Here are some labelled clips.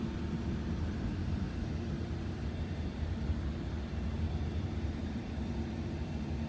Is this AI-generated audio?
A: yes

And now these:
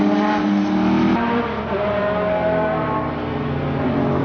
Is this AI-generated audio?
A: no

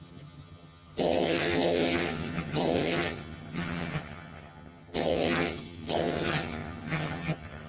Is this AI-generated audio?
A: yes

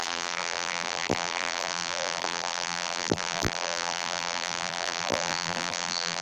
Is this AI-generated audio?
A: yes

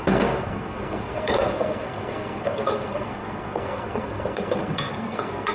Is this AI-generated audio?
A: yes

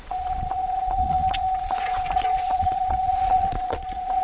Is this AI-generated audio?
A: yes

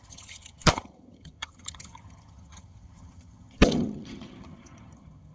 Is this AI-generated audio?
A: yes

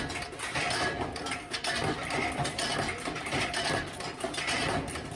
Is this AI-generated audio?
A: no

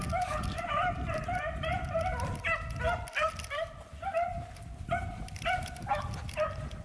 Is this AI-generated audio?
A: yes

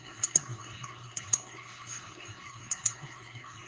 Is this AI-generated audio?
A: yes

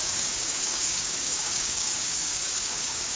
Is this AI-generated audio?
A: yes